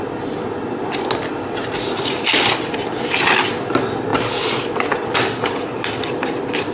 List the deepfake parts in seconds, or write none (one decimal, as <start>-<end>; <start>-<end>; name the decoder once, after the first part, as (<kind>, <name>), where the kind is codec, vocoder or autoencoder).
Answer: none